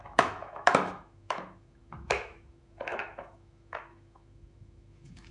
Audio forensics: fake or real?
fake